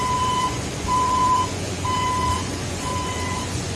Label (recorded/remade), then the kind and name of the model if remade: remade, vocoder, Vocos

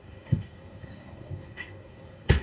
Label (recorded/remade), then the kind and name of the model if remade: remade, codec, SNAC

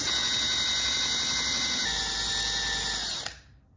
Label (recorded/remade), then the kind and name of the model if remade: recorded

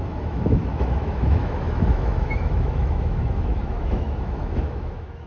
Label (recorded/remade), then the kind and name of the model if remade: remade, autoencoder, DAC-VAE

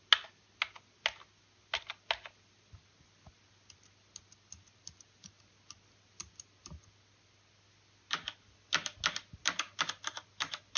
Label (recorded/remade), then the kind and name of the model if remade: recorded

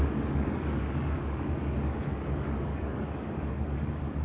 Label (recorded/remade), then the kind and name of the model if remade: remade, codec, DAC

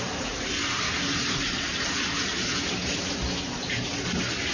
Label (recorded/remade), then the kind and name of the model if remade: recorded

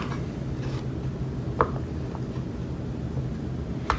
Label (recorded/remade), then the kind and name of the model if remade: recorded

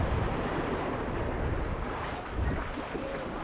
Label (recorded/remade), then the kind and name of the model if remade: recorded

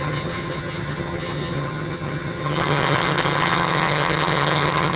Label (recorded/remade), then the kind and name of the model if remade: remade, vocoder, HiFi-GAN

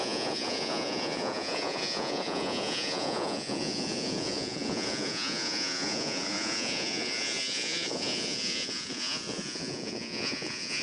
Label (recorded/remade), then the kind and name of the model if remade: remade, vocoder, Vocos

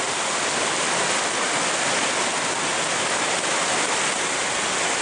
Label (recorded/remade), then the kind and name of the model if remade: recorded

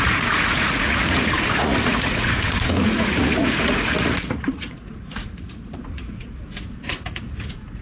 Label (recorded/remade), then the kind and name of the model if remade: remade, vocoder, Vocos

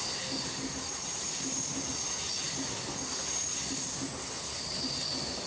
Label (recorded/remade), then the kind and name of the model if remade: recorded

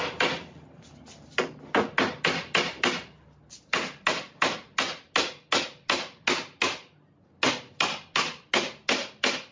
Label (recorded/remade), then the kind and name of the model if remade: recorded